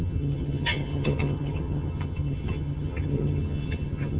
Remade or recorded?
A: remade